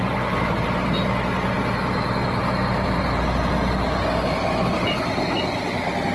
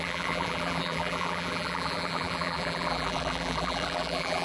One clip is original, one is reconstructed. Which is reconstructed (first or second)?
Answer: second